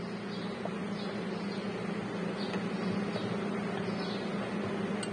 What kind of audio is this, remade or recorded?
recorded